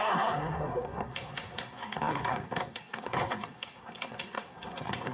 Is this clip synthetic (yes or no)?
yes